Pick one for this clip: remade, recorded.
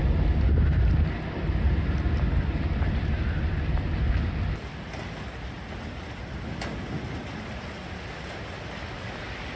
recorded